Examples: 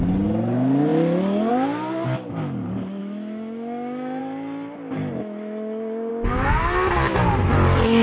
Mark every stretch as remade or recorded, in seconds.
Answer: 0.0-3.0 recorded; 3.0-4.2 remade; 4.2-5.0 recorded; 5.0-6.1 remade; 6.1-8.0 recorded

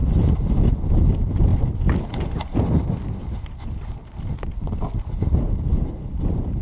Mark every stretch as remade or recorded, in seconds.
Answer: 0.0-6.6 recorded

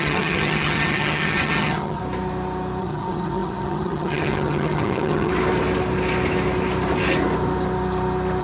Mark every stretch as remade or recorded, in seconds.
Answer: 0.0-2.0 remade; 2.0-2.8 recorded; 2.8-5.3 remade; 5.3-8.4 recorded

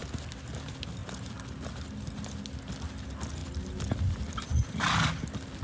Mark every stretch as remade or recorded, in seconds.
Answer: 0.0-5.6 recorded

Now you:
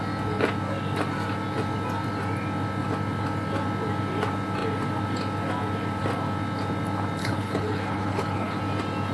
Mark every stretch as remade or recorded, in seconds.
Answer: 0.0-7.2 recorded; 7.2-8.6 remade; 8.6-9.1 recorded

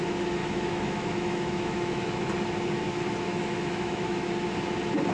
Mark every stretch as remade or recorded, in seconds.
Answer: 0.0-0.4 recorded; 0.4-2.3 remade; 2.3-3.3 recorded; 3.3-4.3 remade; 4.3-5.1 recorded

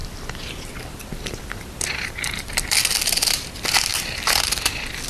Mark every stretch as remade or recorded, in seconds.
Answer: 0.0-3.1 remade; 3.1-3.9 recorded; 3.9-5.1 remade

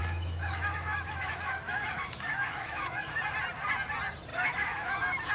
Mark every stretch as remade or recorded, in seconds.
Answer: 0.0-3.2 remade; 3.2-4.3 recorded; 4.3-5.3 remade